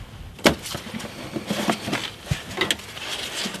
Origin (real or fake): real